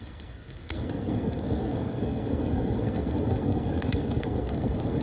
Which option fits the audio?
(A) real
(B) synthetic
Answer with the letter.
B